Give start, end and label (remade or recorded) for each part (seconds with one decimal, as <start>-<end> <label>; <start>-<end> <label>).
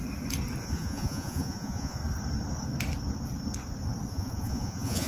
0.0-0.6 recorded; 0.6-2.0 remade; 2.0-4.1 recorded; 4.1-5.1 remade